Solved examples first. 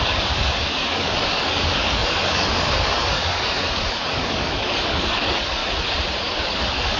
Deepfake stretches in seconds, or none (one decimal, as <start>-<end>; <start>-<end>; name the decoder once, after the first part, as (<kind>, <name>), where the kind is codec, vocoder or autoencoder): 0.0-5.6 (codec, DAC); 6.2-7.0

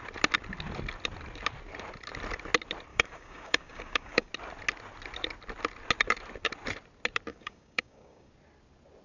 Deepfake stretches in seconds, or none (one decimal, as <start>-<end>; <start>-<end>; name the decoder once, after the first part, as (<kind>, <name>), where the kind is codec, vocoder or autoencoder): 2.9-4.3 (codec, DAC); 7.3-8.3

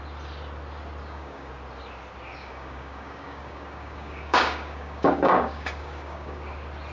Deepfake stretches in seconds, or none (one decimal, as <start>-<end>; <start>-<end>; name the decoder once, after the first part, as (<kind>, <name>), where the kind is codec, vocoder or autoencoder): 1.0-1.5 (codec, DAC); 2.4-6.5

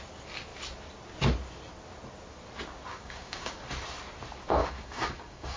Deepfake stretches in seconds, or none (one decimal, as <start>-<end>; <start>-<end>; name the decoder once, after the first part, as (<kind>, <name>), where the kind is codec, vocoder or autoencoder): 2.9-3.6 (codec, DAC); 4.6-5.6

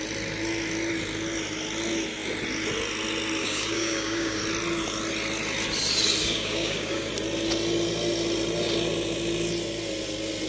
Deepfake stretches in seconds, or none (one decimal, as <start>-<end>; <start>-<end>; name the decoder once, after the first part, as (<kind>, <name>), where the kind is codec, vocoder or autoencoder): 3.4-4.4 (codec, DAC); 6.2-7.1

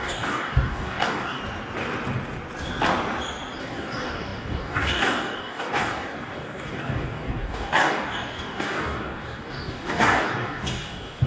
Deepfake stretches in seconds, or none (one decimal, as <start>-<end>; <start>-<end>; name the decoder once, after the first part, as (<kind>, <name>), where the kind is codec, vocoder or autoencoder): 0.0-1.4 (codec, DAC); 3.6-11.3

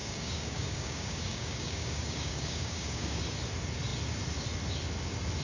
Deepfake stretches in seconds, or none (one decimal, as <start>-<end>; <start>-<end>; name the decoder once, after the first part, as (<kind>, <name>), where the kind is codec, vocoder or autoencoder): 0.0-3.2 (codec, DAC)

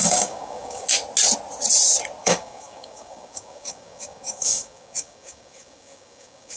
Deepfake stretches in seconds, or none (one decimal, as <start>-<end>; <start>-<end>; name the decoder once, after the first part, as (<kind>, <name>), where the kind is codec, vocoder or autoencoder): 0.0-0.9 (codec, DAC); 2.2-6.6